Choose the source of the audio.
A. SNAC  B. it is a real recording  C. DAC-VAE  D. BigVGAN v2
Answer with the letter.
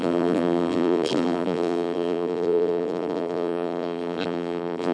D